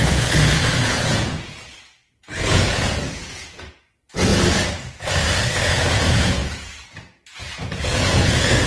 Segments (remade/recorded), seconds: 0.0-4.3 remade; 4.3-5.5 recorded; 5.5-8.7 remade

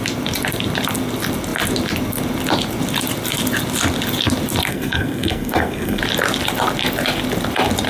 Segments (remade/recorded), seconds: 0.0-4.7 recorded; 4.7-6.0 remade; 6.0-7.9 recorded

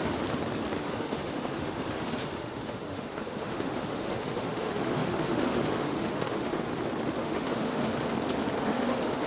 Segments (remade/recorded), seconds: 0.0-0.8 recorded; 0.8-6.7 remade; 6.7-7.2 recorded; 7.2-7.9 remade; 7.9-8.6 recorded; 8.6-9.3 remade

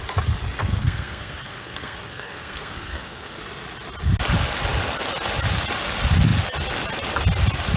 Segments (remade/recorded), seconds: 0.0-0.6 recorded; 0.6-3.4 remade; 3.4-7.8 recorded

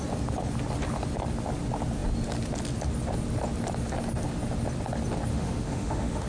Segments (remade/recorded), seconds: 0.0-5.3 recorded; 5.3-6.3 remade